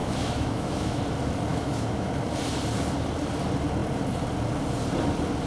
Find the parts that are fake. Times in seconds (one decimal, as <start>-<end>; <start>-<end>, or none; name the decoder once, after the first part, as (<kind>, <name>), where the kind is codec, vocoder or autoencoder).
0.0-1.0 (autoencoder, DAC-VAE); 1.5-2.1